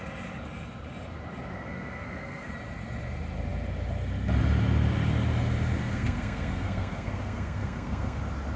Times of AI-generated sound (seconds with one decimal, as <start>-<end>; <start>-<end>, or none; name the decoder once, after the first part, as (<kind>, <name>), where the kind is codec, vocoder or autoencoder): 1.5-2.5 (codec, SNAC); 5.8-8.2